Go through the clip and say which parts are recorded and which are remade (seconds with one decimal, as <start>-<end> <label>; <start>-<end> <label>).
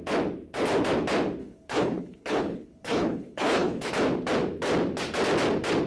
0.0-1.4 recorded; 1.4-3.9 remade; 3.9-5.9 recorded